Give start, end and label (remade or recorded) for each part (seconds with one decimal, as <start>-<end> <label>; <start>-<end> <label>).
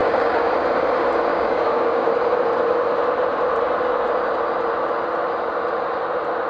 0.0-0.5 remade; 0.5-1.3 recorded; 1.3-2.1 remade; 2.1-6.5 recorded